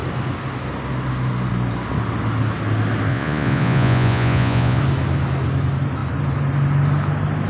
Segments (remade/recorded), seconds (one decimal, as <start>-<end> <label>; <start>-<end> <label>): 0.0-3.1 recorded; 3.1-4.8 remade; 4.8-7.5 recorded